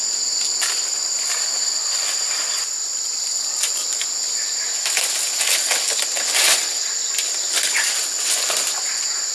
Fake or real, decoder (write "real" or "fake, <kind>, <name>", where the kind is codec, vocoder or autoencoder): real